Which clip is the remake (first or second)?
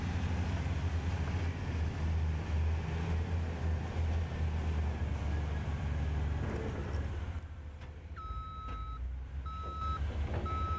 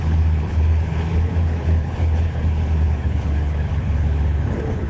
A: second